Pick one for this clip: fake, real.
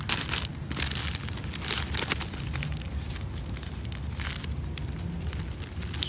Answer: real